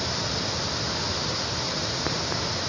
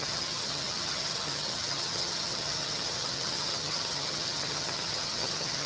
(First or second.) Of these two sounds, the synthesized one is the second